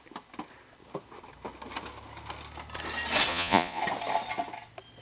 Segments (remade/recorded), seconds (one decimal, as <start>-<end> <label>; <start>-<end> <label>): 0.0-3.3 recorded; 3.3-3.8 remade; 3.8-5.0 recorded

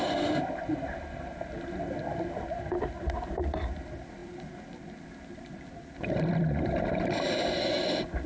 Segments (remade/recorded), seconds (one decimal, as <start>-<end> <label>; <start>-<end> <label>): 0.0-8.3 recorded

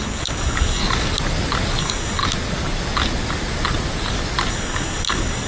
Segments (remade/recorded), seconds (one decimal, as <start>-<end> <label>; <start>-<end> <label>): 0.0-0.8 remade; 0.8-1.8 recorded; 1.8-2.2 remade; 2.2-4.5 recorded; 4.5-5.5 remade